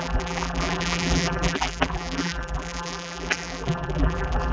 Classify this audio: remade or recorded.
remade